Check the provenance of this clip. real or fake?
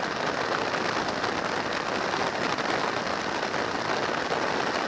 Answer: real